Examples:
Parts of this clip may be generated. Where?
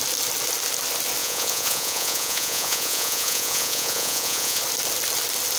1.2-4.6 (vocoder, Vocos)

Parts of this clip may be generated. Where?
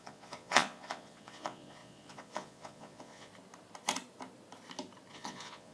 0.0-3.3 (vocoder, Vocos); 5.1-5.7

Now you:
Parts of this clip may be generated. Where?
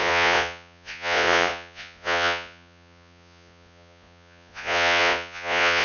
0.0-5.8 (vocoder, Vocos)